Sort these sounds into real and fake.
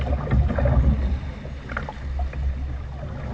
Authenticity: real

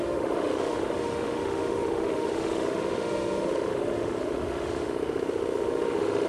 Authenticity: fake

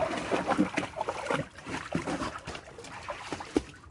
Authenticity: real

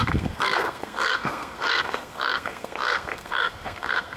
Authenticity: fake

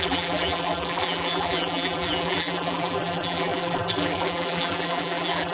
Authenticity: fake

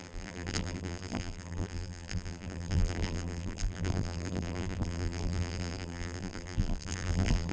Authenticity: fake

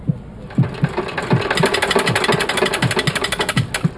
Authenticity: real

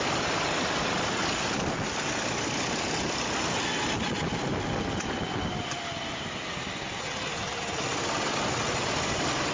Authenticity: real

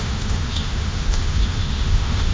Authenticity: fake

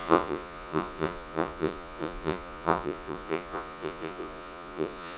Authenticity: fake